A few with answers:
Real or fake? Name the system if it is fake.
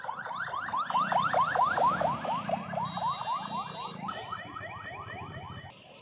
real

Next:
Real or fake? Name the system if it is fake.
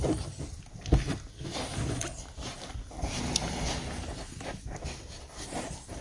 real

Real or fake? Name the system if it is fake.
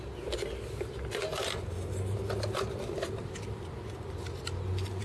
real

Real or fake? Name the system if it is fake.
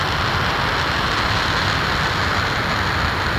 real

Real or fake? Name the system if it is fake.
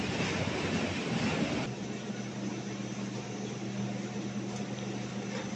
real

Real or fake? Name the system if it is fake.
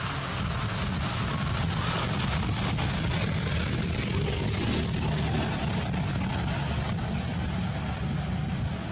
real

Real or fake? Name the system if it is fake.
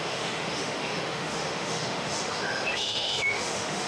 fake, autoencoder, DAC-VAE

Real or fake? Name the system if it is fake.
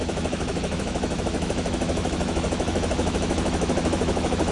fake, autoencoder, DAC-VAE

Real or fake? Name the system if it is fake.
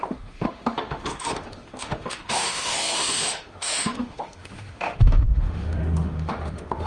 fake, autoencoder, DAC-VAE